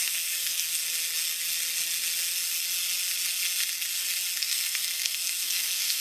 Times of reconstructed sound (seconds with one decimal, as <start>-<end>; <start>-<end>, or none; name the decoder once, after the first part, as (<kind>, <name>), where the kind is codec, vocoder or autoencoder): 0.0-0.8 (codec, SNAC); 4.4-6.0